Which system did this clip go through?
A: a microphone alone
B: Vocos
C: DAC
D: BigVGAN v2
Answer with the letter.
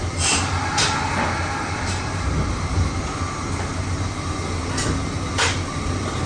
A